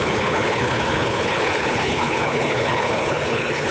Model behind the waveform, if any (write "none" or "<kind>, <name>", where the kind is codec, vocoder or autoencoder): codec, HILCodec